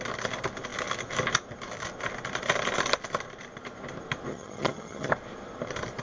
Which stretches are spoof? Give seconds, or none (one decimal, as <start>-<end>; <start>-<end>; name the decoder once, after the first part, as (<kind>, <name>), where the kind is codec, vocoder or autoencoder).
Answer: 4.3-5.1 (vocoder, HiFi-GAN)